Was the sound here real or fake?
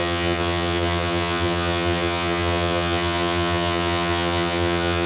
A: fake